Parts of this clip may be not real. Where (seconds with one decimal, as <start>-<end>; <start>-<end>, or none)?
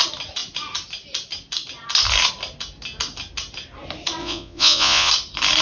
4.2-5.1